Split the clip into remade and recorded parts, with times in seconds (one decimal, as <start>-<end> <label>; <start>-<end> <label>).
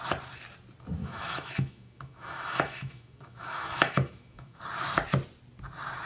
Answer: 0.0-1.0 recorded; 1.0-4.6 remade; 4.6-6.1 recorded